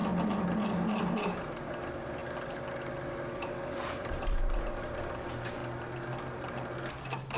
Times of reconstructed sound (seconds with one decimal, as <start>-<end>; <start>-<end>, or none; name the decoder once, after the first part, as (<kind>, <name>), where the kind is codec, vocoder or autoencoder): 1.0-2.2 (vocoder, BigVGAN v2); 3.3-5.6; 6.9-7.4